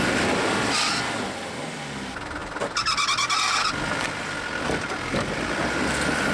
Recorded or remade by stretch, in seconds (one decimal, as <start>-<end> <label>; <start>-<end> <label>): 0.0-6.3 recorded